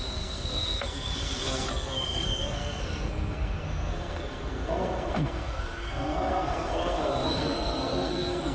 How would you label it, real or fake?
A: fake